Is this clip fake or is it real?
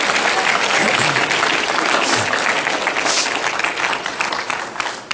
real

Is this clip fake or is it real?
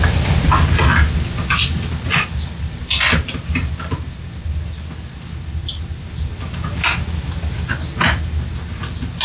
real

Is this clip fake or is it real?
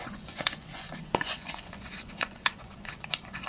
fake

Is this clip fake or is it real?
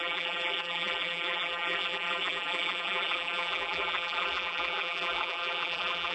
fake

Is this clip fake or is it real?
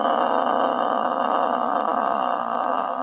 real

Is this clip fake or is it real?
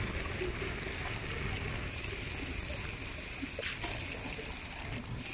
real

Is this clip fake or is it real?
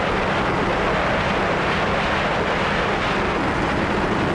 real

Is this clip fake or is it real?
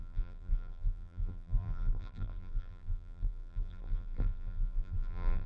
fake